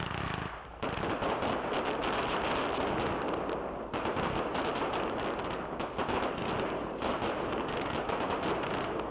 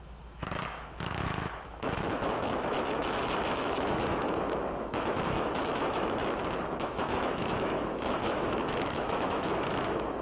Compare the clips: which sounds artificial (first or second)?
second